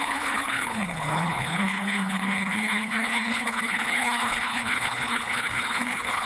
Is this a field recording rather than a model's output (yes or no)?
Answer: no